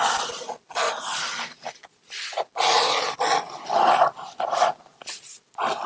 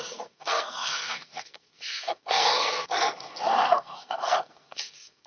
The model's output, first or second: second